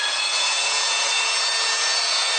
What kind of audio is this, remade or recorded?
remade